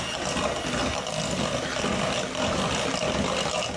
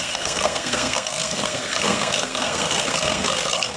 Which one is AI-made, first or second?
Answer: second